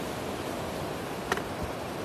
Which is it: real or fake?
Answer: real